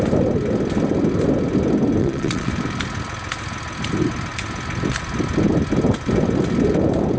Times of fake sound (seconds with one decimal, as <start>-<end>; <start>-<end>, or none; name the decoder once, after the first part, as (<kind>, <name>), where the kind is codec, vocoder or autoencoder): 2.0-2.5 (vocoder, Vocos)